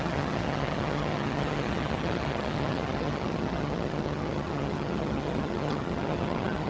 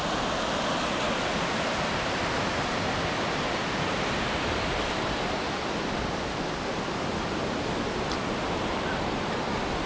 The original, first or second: second